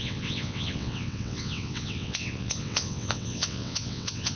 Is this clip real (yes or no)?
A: no